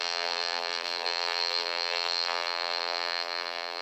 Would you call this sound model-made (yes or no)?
yes